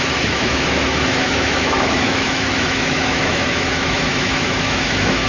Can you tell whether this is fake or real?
fake